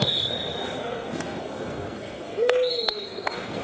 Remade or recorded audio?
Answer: remade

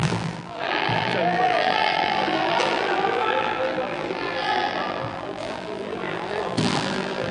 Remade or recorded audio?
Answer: remade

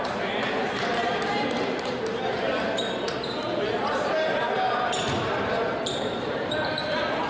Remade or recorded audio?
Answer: remade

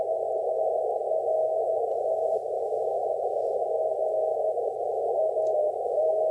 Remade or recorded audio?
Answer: recorded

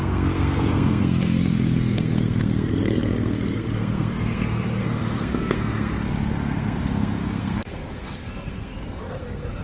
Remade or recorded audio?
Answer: remade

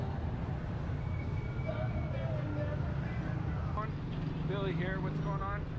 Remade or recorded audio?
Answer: recorded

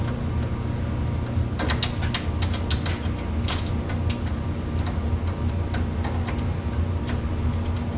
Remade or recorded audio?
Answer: recorded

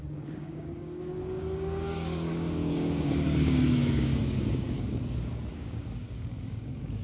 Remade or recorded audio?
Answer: remade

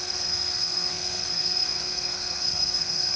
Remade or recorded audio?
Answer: remade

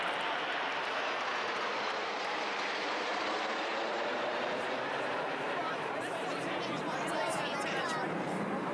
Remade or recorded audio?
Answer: remade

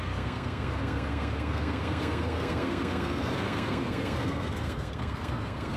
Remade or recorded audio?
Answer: remade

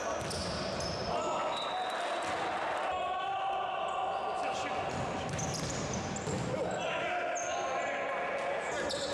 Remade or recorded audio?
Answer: recorded